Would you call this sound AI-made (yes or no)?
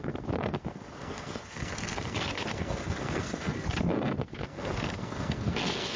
yes